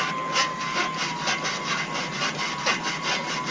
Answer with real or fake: real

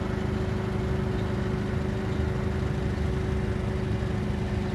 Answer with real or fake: real